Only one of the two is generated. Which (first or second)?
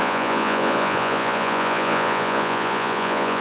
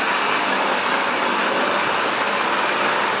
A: first